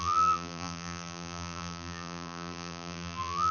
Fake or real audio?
fake